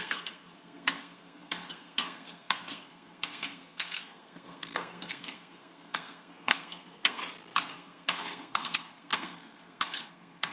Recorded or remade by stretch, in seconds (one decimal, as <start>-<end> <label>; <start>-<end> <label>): 0.0-7.2 remade; 7.2-7.7 recorded; 7.7-10.5 remade